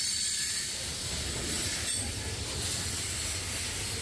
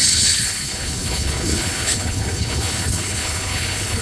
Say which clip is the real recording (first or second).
first